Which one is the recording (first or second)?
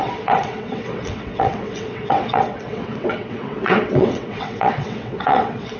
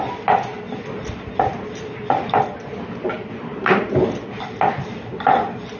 second